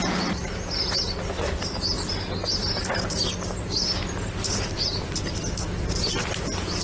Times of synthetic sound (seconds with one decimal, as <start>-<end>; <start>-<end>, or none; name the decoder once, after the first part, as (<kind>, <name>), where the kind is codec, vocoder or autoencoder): none